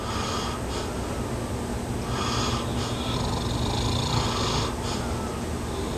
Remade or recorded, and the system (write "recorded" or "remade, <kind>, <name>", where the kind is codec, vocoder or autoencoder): recorded